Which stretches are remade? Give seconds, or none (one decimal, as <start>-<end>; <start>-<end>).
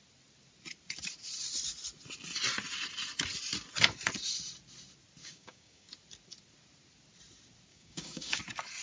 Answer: 5.2-5.9; 7.7-8.4